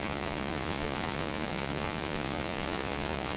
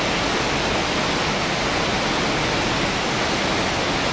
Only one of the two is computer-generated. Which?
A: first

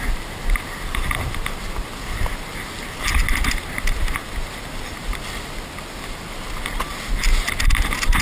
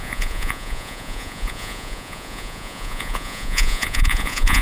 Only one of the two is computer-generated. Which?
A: second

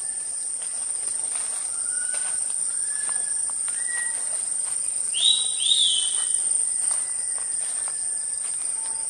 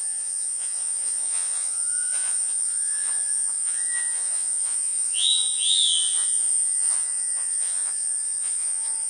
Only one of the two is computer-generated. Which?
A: second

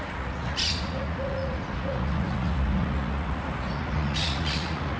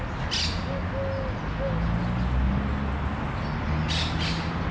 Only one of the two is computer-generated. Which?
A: first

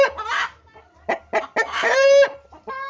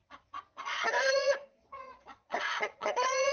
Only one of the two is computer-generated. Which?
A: second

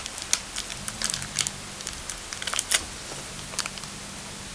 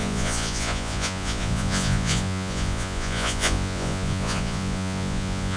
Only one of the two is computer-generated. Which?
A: second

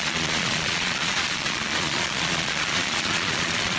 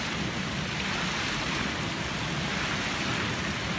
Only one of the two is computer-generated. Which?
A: first